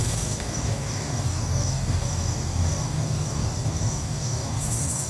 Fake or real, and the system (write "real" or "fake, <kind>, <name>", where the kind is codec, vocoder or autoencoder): fake, codec, DAC